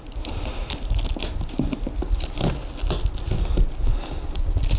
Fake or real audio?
real